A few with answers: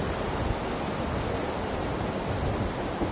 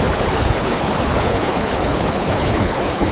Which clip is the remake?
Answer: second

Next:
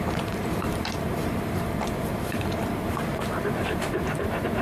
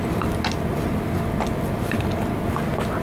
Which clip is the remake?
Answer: first